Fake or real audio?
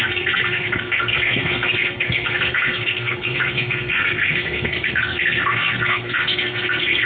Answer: fake